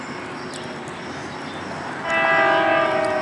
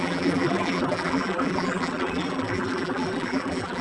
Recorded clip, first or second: first